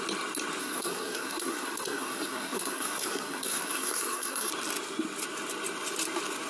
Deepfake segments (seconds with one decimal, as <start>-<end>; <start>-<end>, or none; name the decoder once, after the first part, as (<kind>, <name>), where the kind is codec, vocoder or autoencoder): 0.6-4.5 (codec, SNAC)